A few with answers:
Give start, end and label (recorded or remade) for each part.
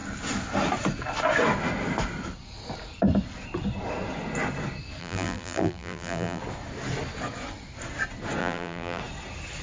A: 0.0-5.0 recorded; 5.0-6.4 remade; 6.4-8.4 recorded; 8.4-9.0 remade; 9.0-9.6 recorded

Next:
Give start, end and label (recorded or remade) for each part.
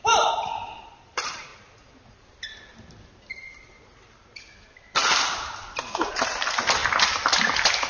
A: 0.0-1.5 remade; 1.5-6.1 recorded; 6.1-6.8 remade; 6.8-7.9 recorded